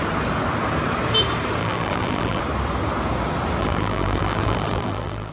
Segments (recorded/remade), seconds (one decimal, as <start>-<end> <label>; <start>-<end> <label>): 0.0-1.6 recorded; 1.6-2.4 remade; 2.4-3.6 recorded; 3.6-5.3 remade